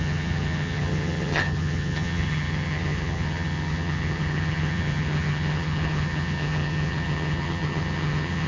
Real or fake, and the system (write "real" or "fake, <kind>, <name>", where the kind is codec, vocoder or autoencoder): fake, vocoder, HiFi-GAN